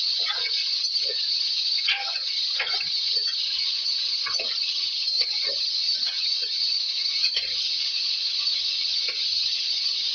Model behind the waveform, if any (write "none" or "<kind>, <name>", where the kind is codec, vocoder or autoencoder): vocoder, HiFi-GAN